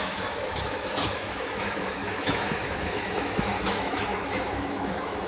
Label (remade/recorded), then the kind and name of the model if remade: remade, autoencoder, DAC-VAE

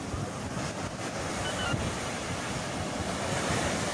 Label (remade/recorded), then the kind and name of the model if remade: recorded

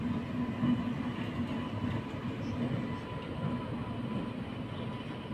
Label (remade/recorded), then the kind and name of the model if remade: recorded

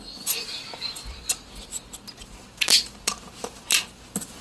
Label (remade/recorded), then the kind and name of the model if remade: recorded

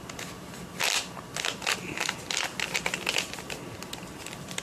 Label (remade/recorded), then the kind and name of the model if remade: recorded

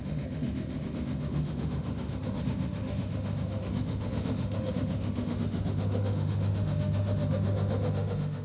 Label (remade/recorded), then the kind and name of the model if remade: remade, autoencoder, DAC-VAE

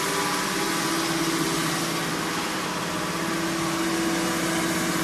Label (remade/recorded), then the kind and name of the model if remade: recorded